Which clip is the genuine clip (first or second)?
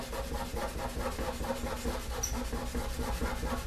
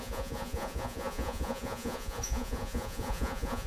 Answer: first